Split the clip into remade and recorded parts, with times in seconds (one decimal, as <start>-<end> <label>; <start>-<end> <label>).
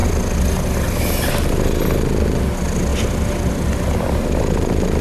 0.0-2.9 recorded; 2.9-3.5 remade; 3.5-5.0 recorded